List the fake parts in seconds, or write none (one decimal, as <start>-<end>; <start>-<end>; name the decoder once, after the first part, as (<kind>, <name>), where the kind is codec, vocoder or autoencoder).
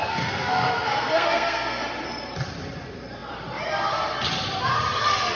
0.0-1.8 (codec, SNAC)